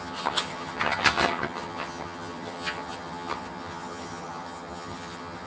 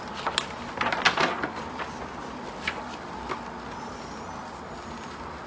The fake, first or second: first